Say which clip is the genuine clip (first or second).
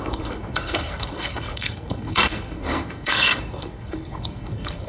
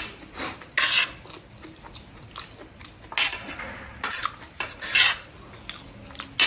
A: second